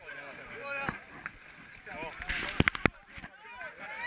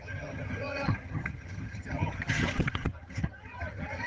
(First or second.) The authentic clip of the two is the first